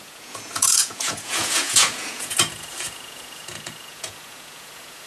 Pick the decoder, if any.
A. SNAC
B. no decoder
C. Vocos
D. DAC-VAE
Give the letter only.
C